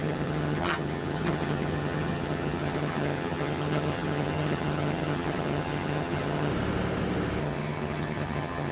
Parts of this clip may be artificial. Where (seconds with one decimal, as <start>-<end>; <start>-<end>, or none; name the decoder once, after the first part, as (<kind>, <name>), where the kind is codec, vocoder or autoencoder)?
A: 0.0-6.5 (vocoder, HiFi-GAN); 7.4-8.7